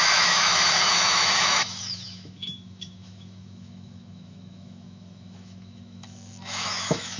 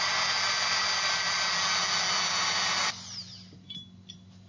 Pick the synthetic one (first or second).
first